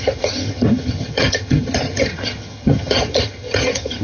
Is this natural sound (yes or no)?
no